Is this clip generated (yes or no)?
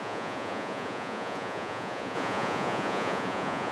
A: yes